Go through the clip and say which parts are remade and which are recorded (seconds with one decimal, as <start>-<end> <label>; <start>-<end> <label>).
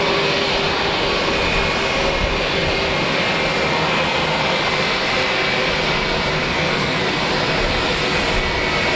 0.0-6.5 recorded; 6.5-7.0 remade; 7.0-9.0 recorded